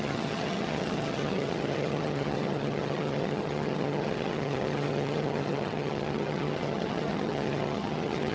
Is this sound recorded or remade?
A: remade